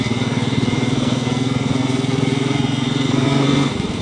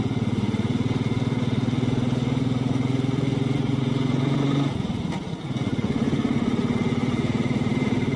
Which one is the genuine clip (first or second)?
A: second